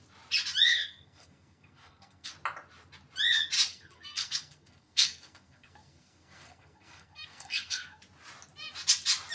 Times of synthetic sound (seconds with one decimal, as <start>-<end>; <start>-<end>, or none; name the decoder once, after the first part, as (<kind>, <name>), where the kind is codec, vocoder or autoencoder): 0.7-2.3 (codec, SNAC); 3.7-8.0